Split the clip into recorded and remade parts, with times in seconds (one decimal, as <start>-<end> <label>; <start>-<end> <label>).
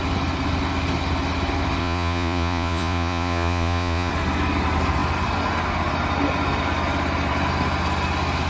0.0-1.8 recorded; 1.8-4.1 remade; 4.1-8.5 recorded